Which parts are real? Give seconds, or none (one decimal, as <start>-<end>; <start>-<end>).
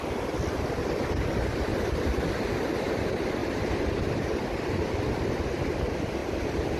0.0-1.7; 2.2-3.4; 4.4-6.2